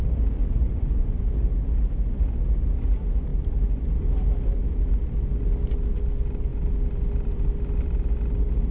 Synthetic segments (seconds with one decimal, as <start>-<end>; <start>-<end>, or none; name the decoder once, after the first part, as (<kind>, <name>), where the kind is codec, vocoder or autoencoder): 0.4-1.3 (vocoder, Vocos)